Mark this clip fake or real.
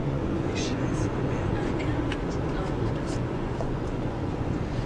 fake